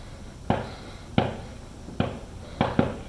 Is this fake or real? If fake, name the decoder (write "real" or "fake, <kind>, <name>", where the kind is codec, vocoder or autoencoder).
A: real